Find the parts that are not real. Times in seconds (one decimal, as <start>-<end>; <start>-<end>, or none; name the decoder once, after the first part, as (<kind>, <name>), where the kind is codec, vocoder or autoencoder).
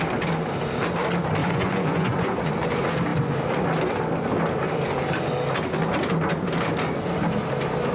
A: 1.4-2.5 (vocoder, Vocos)